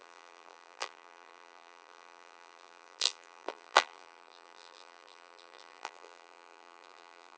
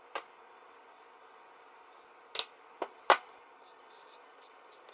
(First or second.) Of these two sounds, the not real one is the first